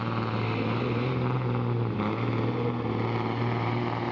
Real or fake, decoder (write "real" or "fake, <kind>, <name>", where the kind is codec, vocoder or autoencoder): real